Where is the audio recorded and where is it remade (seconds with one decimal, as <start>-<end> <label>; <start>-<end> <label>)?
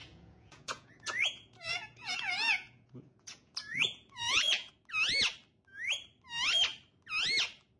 0.0-4.7 remade; 4.7-7.8 recorded